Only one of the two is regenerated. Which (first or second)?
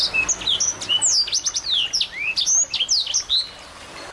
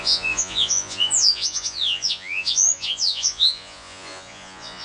second